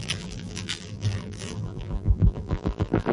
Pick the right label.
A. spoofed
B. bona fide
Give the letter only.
A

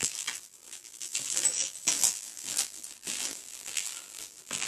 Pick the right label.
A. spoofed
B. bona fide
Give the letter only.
A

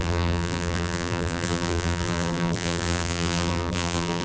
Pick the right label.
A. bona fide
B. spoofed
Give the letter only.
B